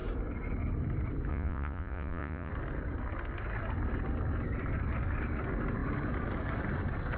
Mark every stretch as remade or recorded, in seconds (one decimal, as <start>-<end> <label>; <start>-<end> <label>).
0.0-1.3 recorded; 1.3-2.5 remade; 2.5-7.2 recorded